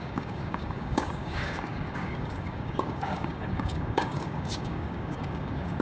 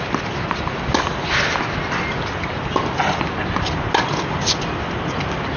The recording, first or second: second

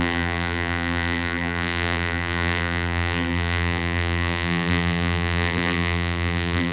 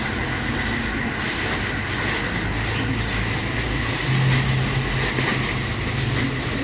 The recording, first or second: second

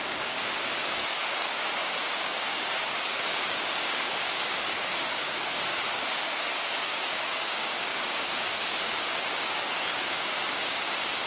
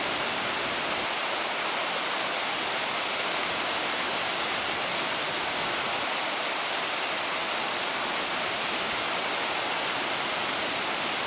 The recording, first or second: second